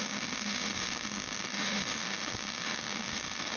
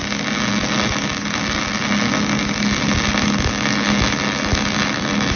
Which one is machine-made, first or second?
first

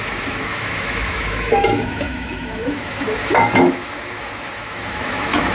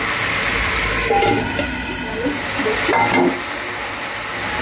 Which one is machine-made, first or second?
first